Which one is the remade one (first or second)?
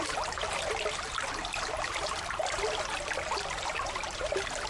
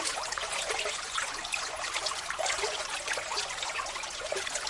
second